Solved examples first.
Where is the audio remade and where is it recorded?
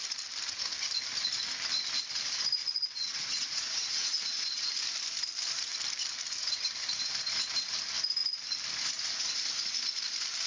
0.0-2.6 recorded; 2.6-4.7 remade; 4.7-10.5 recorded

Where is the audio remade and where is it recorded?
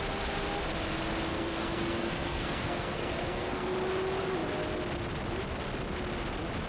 0.0-1.3 recorded; 1.3-3.7 remade; 3.7-6.7 recorded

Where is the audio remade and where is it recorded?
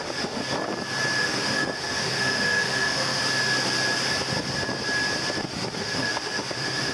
0.0-0.4 remade; 0.4-1.2 recorded; 1.2-3.2 remade; 3.2-5.4 recorded; 5.4-6.9 remade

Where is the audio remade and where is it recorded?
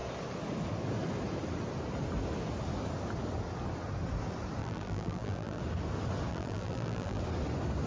0.0-4.6 recorded; 4.6-5.6 remade; 5.6-6.3 recorded; 6.3-7.2 remade; 7.2-7.9 recorded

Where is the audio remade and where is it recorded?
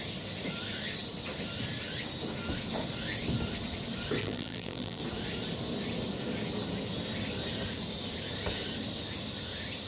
0.0-4.2 recorded; 4.2-5.0 remade; 5.0-9.9 recorded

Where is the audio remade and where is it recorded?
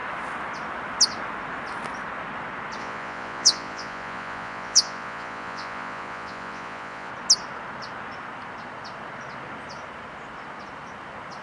0.0-2.8 recorded; 2.8-7.1 remade; 7.1-11.4 recorded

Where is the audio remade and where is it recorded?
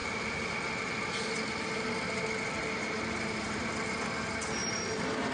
0.0-2.6 recorded; 2.6-3.7 remade; 3.7-5.3 recorded